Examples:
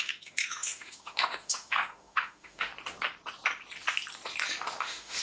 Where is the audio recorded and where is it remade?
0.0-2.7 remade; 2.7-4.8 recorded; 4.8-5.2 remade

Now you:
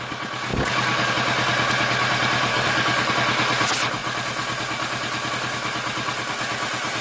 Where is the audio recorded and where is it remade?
0.0-0.5 recorded; 0.5-1.1 remade; 1.1-2.5 recorded; 2.5-3.1 remade; 3.1-7.0 recorded